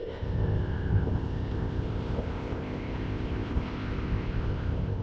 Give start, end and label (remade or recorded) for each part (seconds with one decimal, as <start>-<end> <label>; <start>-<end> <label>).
0.0-5.0 remade